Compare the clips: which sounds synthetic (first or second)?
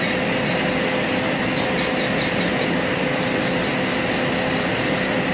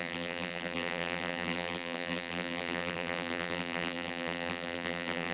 second